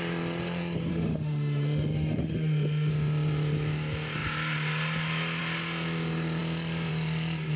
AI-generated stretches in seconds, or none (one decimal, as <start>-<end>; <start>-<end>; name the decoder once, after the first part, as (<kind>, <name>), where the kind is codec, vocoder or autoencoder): 0.9-2.9 (autoencoder, DAC-VAE)